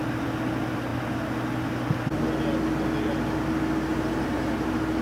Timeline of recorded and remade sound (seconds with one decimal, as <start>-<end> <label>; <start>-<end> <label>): 0.0-3.9 recorded; 3.9-4.5 remade; 4.5-5.0 recorded